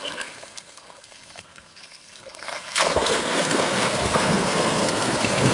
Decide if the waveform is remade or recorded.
remade